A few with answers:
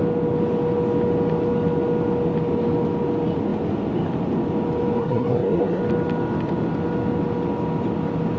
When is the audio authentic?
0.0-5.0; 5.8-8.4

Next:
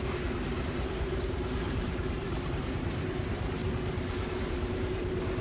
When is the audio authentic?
3.6-4.3

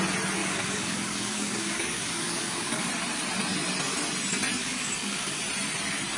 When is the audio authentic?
0.0-0.4; 2.9-4.6; 5.4-6.2

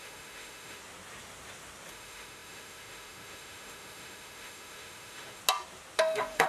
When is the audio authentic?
0.8-1.9; 5.4-6.0

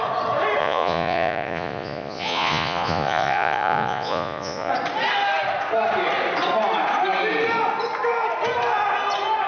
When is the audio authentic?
0.0-0.6; 4.7-9.5

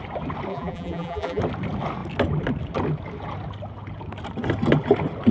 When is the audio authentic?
0.0-0.5; 1.4-5.3

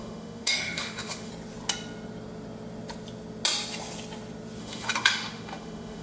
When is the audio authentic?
1.3-4.6